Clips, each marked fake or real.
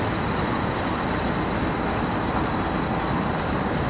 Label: real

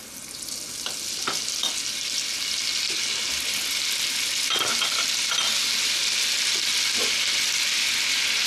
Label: real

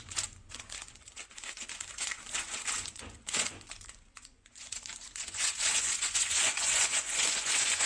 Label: fake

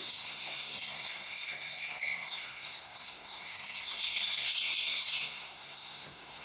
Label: fake